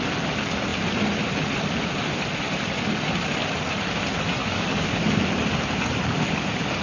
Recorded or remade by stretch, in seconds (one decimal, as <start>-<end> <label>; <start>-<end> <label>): 0.0-4.4 recorded; 4.4-5.2 remade; 5.2-6.8 recorded